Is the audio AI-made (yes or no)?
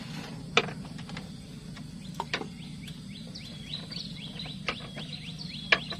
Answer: no